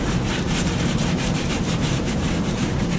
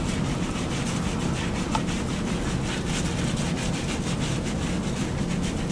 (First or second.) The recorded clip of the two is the second